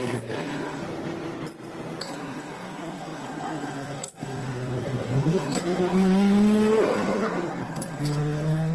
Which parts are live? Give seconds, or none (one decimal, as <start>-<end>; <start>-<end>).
0.8-2.0